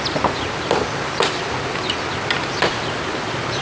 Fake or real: real